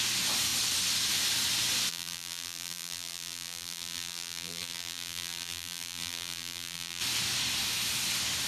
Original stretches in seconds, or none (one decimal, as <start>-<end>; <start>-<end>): 0.0-1.9; 7.0-8.5